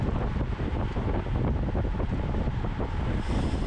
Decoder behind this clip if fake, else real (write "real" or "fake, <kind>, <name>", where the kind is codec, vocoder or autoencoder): real